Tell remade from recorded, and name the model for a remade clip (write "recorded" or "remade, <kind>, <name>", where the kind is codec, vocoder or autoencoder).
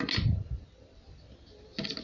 recorded